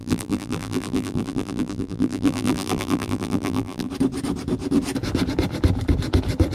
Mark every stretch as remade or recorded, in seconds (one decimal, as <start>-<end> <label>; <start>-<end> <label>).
0.0-3.9 remade; 3.9-6.5 recorded